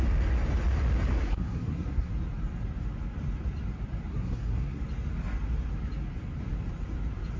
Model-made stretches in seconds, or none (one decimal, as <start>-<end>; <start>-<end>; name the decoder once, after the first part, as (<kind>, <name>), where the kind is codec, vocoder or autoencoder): 1.1-2.1 (codec, SNAC); 4.1-4.8